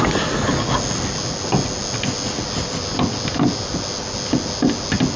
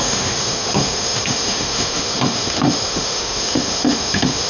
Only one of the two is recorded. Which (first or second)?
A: first